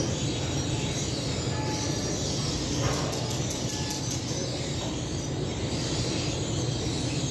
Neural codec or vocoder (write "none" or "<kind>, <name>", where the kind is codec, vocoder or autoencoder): none